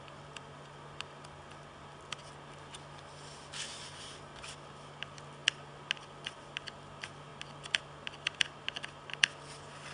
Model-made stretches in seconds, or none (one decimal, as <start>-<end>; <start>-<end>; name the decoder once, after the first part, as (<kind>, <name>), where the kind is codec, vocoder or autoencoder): none